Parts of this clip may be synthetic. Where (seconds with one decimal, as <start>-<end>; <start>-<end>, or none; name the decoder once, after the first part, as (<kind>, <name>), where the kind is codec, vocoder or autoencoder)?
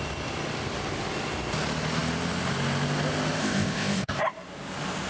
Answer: 3.4-4.2 (codec, ZipCodec)